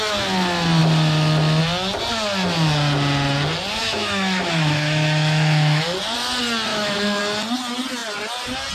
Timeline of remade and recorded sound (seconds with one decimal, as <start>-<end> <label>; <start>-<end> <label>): 0.0-3.8 recorded; 3.8-5.8 remade; 5.8-6.7 recorded; 6.7-7.2 remade; 7.2-8.7 recorded